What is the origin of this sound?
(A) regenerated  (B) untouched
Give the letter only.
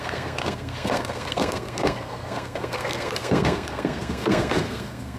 A